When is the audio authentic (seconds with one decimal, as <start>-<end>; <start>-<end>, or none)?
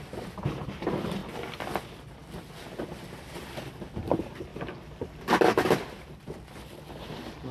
0.0-4.5; 7.1-7.5